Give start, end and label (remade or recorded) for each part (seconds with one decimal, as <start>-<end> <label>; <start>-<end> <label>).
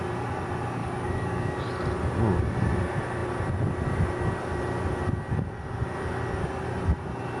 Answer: 0.0-0.8 recorded; 0.8-1.6 remade; 1.6-7.4 recorded